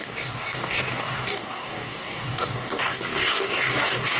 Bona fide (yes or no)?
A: no